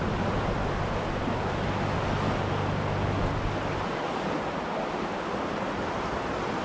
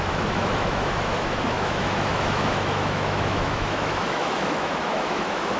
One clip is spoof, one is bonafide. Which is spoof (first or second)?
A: second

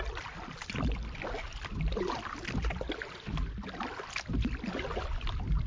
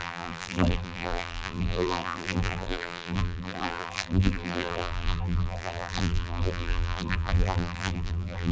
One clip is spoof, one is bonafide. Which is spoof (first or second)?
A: second